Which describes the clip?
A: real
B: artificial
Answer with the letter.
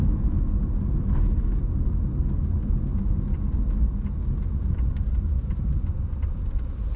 A